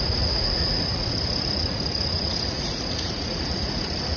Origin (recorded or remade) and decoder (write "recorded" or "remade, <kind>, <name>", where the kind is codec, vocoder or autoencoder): remade, vocoder, Vocos